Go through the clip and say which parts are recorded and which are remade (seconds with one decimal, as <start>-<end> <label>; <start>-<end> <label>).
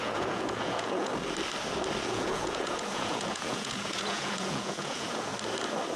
0.0-1.1 remade; 1.1-2.0 recorded; 2.0-5.3 remade; 5.3-6.0 recorded